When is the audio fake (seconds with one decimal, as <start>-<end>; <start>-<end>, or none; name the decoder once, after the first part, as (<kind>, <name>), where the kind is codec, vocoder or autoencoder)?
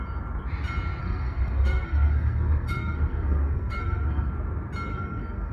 1.0-4.3 (codec, SNAC); 4.9-5.5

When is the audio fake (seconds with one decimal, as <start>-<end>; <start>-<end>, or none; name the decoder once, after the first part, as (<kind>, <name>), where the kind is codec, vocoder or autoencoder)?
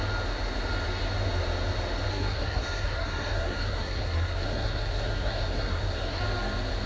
2.1-6.2 (codec, SNAC)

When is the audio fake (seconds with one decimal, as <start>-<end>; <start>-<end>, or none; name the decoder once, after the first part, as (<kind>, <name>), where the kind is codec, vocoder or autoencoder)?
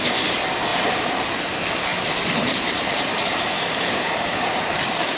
0.7-1.3 (vocoder, BigVGAN v2); 1.9-5.2